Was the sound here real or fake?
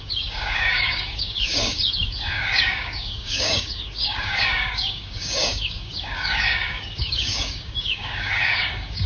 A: fake